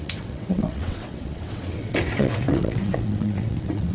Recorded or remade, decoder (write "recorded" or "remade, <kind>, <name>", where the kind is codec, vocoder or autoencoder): remade, vocoder, WaveNeXt